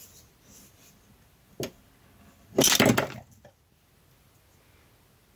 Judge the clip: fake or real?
real